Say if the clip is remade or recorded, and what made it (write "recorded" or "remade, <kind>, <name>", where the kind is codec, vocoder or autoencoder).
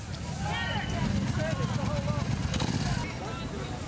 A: recorded